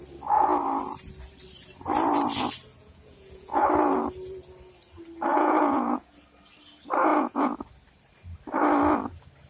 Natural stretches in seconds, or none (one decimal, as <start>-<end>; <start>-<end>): 0.0-2.8; 3.6-5.3; 6.1-7.1; 7.6-9.5